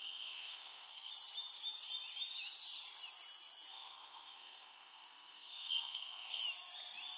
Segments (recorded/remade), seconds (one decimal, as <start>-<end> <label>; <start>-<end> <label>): 0.0-1.1 remade; 1.1-3.7 recorded; 3.7-6.4 remade; 6.4-7.2 recorded